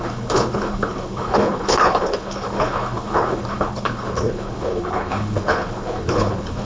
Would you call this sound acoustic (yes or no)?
no